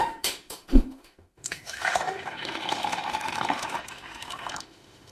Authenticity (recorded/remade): remade